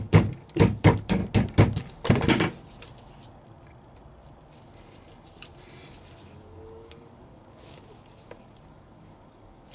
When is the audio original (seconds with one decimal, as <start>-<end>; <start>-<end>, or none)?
1.2-5.9